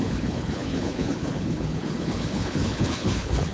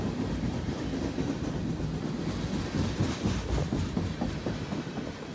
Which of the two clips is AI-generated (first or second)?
first